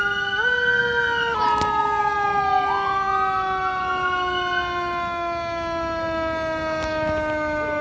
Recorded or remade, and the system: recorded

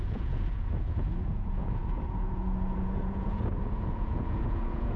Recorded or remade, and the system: remade, vocoder, Vocos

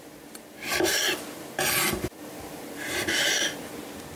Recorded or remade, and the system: recorded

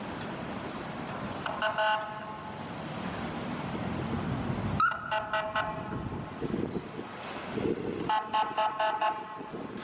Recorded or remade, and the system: recorded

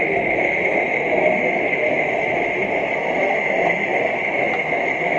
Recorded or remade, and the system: recorded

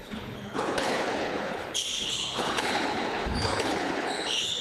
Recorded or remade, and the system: remade, codec, HILCodec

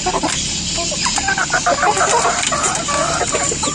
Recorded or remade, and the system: recorded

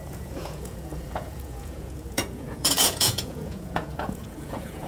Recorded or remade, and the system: remade, vocoder, Vocos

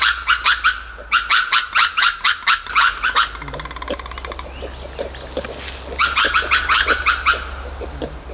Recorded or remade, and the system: recorded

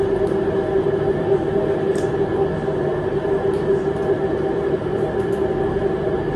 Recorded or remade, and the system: recorded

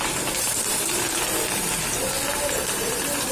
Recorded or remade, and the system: remade, vocoder, BigVGAN v2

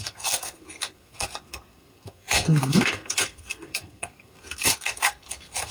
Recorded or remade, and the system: remade, codec, SNAC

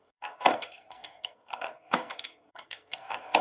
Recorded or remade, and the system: remade, codec, SNAC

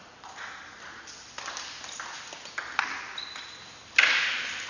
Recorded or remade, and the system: recorded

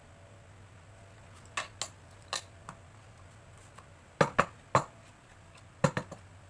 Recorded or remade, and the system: recorded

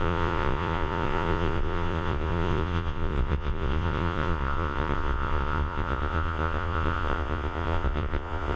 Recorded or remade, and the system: remade, vocoder, Vocos